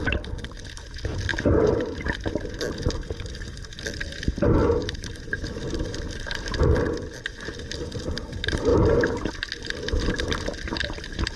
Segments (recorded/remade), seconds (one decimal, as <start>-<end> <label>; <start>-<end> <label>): 0.0-4.6 recorded; 4.6-6.6 remade; 6.6-8.7 recorded; 8.7-9.3 remade; 9.3-11.4 recorded

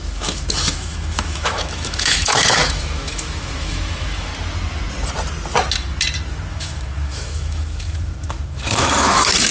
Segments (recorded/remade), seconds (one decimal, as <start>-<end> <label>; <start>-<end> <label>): 0.0-4.3 remade; 4.3-6.5 recorded; 6.5-9.5 remade

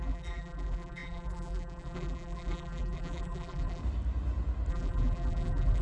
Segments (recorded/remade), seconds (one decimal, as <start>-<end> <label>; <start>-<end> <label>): 0.0-3.8 remade; 3.8-4.7 recorded; 4.7-5.8 remade

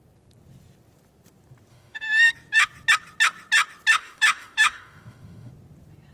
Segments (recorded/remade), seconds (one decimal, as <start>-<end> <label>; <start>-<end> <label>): 0.0-1.7 recorded; 1.7-2.3 remade; 2.3-3.9 recorded; 3.9-5.5 remade; 5.5-6.1 recorded

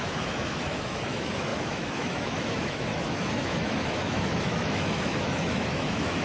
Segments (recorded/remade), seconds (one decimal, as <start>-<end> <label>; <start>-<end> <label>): 0.0-6.2 remade

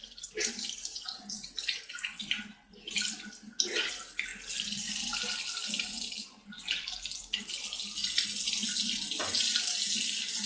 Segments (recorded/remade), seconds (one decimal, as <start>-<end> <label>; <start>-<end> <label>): 0.0-10.5 recorded